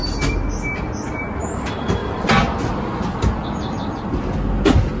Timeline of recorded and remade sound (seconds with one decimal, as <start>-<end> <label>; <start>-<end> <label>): 0.0-5.0 recorded